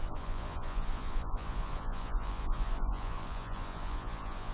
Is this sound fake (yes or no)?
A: yes